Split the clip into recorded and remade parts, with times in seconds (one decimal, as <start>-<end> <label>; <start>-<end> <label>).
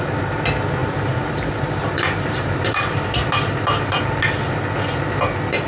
0.0-0.8 recorded; 0.8-4.2 remade; 4.2-5.7 recorded